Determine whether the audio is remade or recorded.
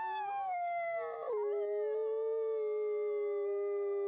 recorded